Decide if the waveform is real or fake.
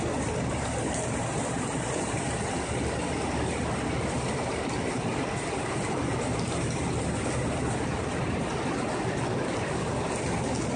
real